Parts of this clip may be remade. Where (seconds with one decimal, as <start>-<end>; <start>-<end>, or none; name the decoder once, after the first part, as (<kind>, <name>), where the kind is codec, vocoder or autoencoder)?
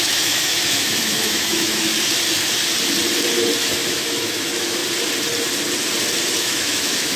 0.0-1.9 (autoencoder, DAC-VAE); 3.6-4.8; 6.4-7.2